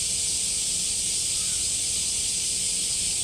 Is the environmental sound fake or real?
real